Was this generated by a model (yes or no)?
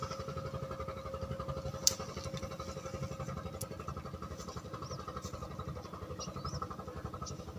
no